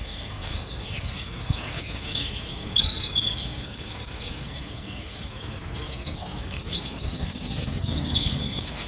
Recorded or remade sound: remade